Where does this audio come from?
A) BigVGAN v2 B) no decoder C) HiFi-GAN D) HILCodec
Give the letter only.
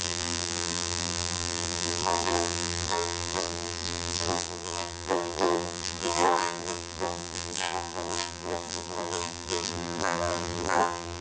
A